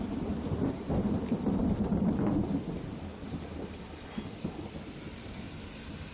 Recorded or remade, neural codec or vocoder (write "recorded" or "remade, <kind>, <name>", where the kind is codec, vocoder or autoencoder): remade, vocoder, BigVGAN v2